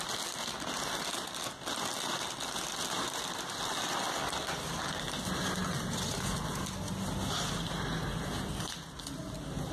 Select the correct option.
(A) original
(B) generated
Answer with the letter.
A